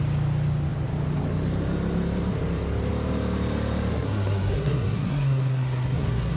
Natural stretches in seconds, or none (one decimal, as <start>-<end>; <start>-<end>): 0.0-3.9